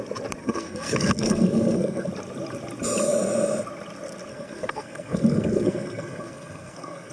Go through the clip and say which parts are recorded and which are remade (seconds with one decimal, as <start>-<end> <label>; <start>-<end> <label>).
0.0-0.4 recorded; 0.4-2.1 remade; 2.1-4.3 recorded; 4.3-7.1 remade